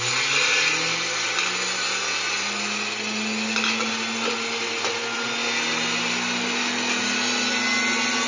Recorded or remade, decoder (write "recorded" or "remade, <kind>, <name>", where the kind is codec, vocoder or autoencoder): recorded